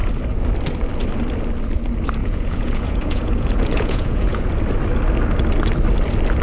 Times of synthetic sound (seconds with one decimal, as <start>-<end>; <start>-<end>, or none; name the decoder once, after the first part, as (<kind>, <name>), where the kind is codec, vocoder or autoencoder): 2.2-4.5 (vocoder, Vocos)